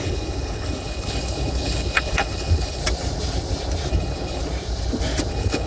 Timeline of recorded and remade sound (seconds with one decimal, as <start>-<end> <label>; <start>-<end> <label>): 0.0-2.8 remade; 2.8-3.9 recorded; 3.9-4.4 remade; 4.4-5.3 recorded; 5.3-5.7 remade